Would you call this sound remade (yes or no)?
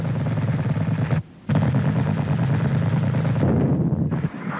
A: no